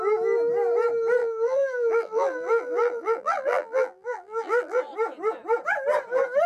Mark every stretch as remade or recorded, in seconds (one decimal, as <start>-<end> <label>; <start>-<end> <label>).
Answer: 0.0-1.2 recorded; 1.2-4.8 remade; 4.8-6.5 recorded